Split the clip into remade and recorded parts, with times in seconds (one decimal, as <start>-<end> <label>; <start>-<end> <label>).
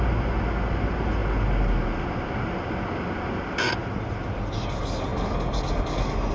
0.0-6.3 recorded